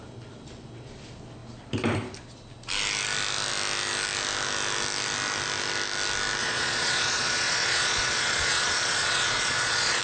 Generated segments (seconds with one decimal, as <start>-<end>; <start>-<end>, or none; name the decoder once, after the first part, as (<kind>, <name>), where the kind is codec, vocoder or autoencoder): 6.4-10.0 (vocoder, Vocos)